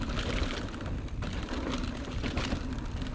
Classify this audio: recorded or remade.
recorded